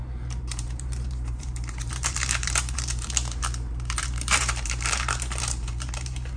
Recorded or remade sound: remade